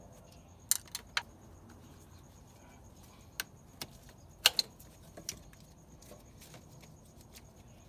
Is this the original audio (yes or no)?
yes